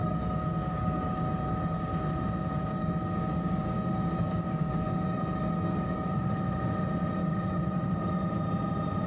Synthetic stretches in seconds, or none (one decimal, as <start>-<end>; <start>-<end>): 0.0-1.9; 2.5-6.3; 7.2-8.0